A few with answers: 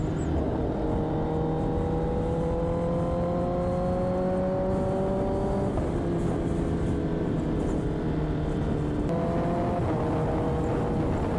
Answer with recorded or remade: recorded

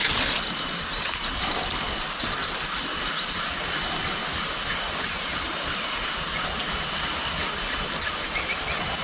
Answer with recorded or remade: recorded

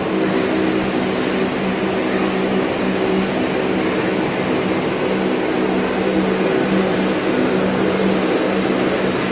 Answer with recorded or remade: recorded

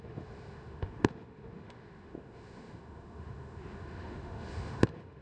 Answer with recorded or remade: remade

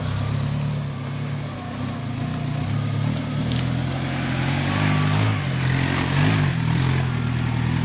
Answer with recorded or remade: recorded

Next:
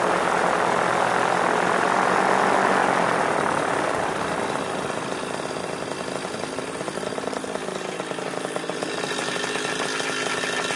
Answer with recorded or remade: recorded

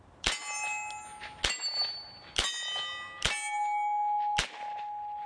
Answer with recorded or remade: recorded